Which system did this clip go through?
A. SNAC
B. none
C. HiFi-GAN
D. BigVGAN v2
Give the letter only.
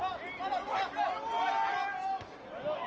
B